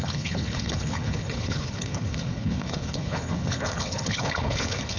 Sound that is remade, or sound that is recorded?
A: remade